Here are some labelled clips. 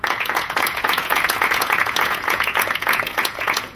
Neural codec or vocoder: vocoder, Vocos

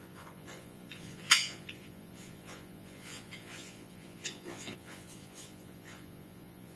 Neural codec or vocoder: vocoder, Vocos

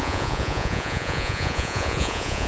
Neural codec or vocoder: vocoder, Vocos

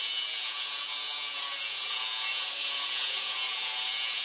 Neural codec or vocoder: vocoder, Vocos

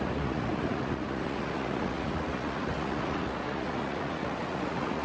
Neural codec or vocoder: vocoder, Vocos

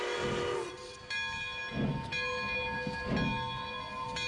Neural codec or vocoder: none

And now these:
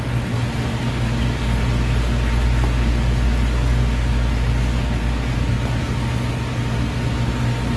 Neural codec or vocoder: none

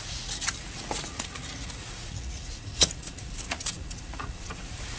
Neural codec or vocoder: vocoder, Vocos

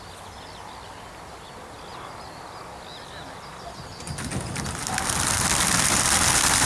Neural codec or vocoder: none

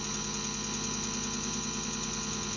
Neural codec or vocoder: none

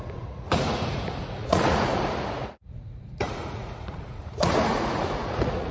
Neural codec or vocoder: vocoder, Vocos